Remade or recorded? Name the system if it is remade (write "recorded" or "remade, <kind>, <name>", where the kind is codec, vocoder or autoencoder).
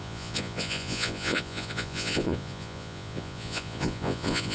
remade, vocoder, Vocos